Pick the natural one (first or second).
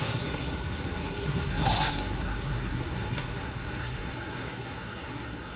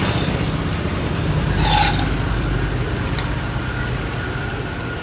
second